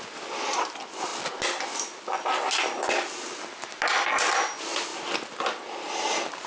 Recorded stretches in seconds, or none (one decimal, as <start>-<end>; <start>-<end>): 0.0-6.5